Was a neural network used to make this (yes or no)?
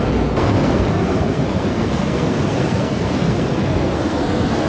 yes